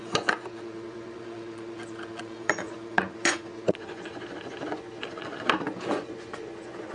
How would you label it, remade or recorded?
remade